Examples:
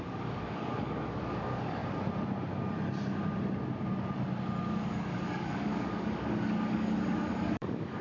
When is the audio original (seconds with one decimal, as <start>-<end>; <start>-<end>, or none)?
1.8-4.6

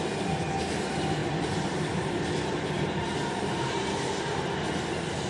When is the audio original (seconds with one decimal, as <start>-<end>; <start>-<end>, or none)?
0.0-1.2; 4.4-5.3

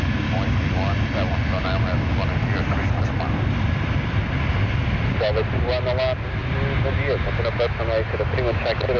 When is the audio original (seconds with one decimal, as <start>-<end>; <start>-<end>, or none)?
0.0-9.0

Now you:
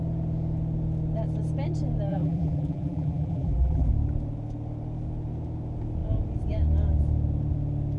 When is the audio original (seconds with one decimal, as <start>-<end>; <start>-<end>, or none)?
0.0-2.1; 3.9-8.0

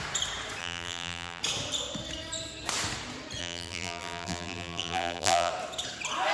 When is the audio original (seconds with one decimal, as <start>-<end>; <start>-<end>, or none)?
0.0-0.6; 1.4-3.4; 5.5-6.3

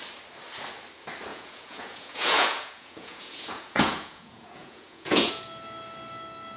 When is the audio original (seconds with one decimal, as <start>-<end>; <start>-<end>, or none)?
0.0-1.3; 5.3-6.6